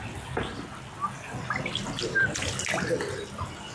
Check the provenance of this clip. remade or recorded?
recorded